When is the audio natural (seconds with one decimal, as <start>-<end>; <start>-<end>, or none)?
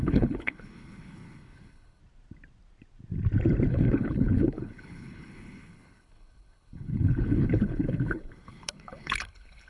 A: 2.0-3.7